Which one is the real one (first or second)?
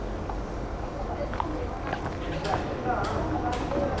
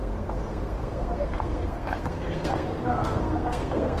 first